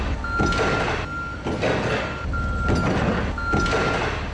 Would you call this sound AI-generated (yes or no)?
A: no